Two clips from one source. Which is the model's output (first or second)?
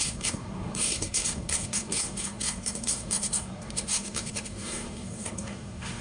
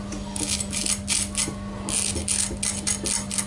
first